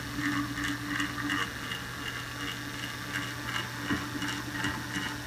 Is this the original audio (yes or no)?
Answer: yes